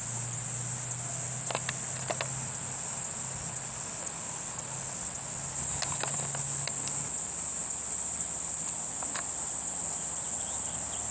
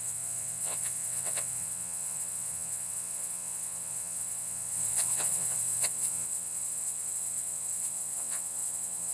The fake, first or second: second